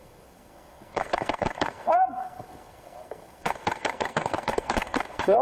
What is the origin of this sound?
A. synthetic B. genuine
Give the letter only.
A